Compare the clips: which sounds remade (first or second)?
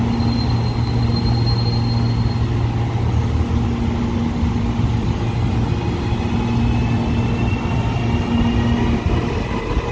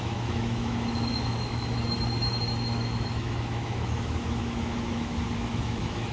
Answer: second